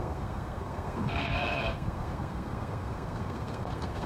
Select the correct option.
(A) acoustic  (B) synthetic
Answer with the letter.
B